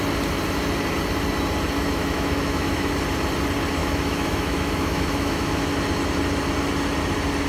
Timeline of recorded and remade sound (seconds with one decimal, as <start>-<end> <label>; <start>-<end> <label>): 0.0-2.0 recorded; 2.0-2.9 remade; 2.9-3.8 recorded; 3.8-5.7 remade; 5.7-7.5 recorded